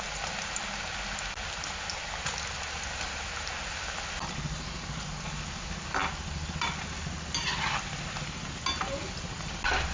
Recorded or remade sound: recorded